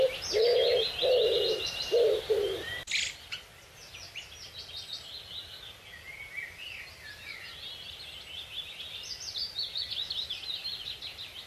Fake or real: real